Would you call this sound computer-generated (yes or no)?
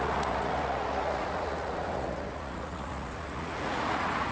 yes